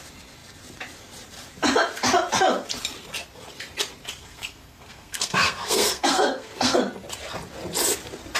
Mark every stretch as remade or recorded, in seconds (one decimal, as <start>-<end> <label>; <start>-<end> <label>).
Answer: 0.0-4.2 recorded; 4.2-6.8 remade; 6.8-8.4 recorded